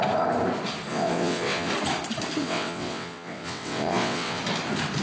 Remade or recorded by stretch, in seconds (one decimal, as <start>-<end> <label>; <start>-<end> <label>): 0.0-0.9 recorded; 0.9-1.7 remade; 1.7-2.4 recorded; 2.4-4.4 remade; 4.4-5.0 recorded